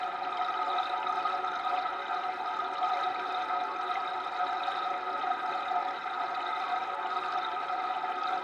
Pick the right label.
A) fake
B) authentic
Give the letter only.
B